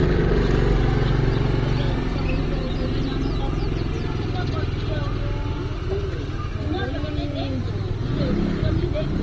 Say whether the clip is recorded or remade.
recorded